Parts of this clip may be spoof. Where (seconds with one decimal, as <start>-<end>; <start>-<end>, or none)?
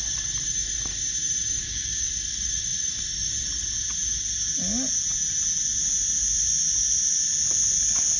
1.6-2.1